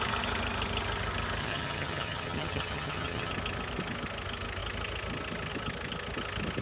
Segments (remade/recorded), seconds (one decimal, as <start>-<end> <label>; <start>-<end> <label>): 0.0-1.4 recorded; 1.4-3.3 remade; 3.3-6.6 recorded